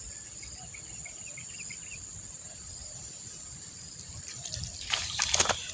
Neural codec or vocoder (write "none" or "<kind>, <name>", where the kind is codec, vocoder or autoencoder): none